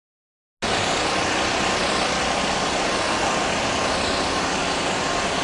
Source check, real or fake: real